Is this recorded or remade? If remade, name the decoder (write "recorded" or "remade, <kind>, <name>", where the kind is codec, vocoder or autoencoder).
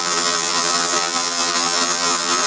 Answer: remade, vocoder, BigVGAN v2